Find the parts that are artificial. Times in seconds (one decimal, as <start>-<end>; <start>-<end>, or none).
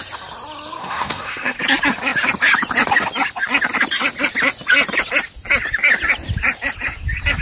0.8-1.6